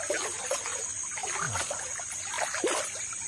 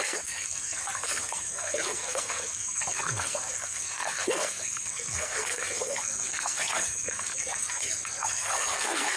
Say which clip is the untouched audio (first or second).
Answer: first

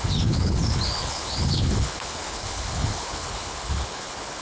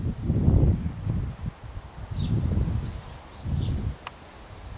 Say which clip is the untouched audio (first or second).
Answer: second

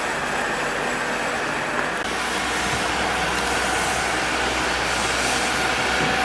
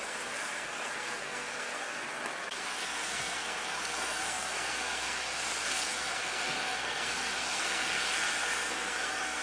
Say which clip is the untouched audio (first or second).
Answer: first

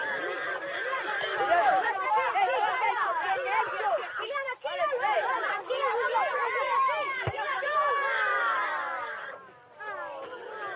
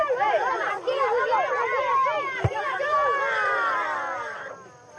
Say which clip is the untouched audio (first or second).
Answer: second